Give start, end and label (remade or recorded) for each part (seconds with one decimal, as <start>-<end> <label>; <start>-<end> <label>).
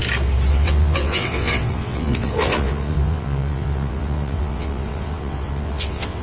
0.0-0.5 recorded; 0.5-6.2 remade